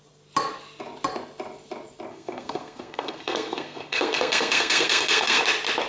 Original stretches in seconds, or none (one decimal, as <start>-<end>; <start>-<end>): 0.0-2.1; 5.4-5.9